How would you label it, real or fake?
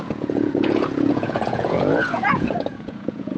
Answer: fake